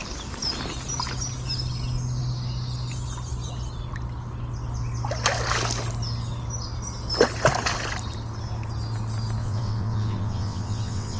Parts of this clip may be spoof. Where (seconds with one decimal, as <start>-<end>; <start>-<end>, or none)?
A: 9.4-11.2